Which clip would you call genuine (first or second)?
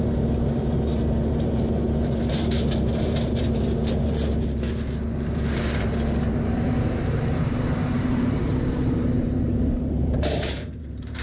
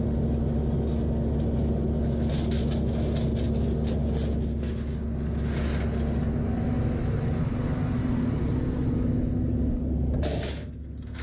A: second